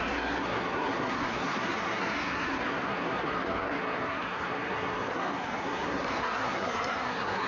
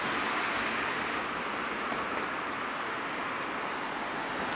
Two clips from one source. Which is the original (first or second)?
second